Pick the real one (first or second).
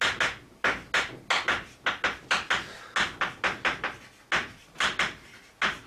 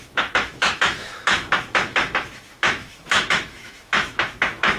first